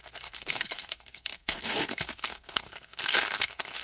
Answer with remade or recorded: remade